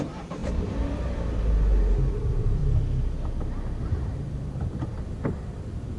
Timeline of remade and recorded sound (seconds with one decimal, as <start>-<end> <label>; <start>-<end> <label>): 0.0-0.4 remade; 0.4-2.1 recorded; 2.1-2.6 remade; 2.6-4.0 recorded; 4.0-4.9 remade; 4.9-6.0 recorded